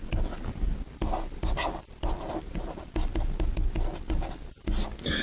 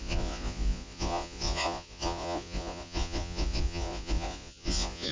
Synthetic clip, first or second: second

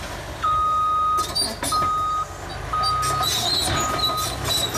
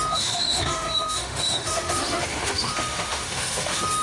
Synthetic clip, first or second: second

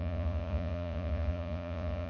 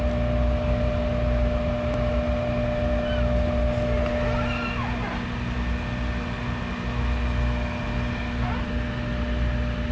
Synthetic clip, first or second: first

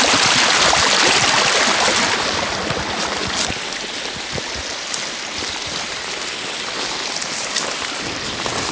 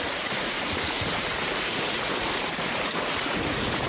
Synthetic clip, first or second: second